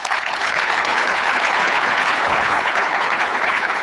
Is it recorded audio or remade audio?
remade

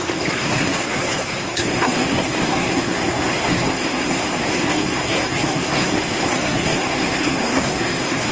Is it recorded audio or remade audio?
remade